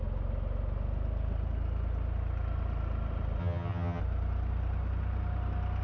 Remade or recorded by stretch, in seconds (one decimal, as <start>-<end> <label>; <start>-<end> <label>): 0.0-3.4 recorded; 3.4-4.0 remade; 4.0-5.8 recorded